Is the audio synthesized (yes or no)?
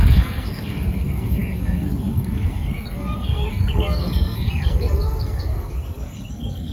yes